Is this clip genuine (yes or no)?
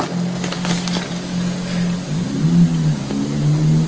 yes